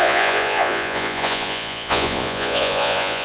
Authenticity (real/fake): fake